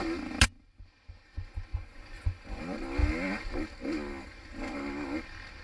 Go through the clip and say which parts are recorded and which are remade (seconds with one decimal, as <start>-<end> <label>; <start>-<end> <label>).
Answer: 0.0-1.7 recorded; 1.7-2.6 remade; 2.6-5.6 recorded